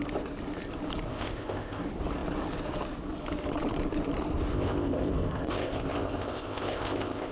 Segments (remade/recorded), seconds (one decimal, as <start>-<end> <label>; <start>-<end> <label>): 0.0-1.1 recorded; 1.1-1.8 remade; 1.8-4.5 recorded; 4.5-7.3 remade